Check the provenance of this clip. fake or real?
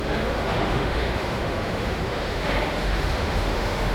fake